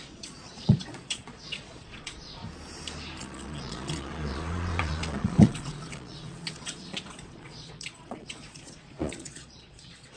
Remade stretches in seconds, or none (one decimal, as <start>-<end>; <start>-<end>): 0.0-2.4; 3.2-10.2